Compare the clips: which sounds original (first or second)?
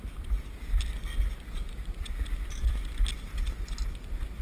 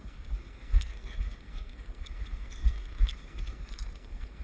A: first